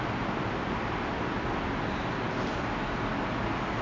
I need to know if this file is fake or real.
real